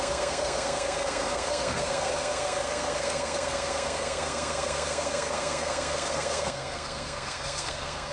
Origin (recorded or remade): remade